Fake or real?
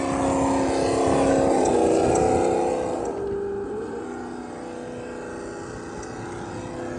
real